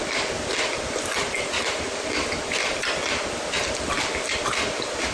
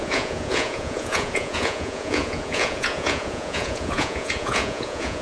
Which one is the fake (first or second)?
second